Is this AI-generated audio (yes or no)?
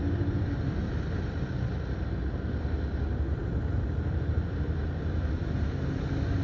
no